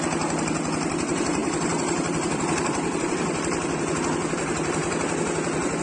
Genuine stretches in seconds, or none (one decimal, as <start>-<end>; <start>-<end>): 0.0-1.4; 4.0-5.8